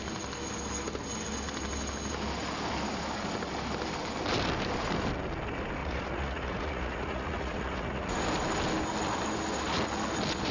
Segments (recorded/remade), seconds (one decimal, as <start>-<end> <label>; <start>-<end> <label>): 0.0-5.8 recorded; 5.8-8.2 remade; 8.2-10.5 recorded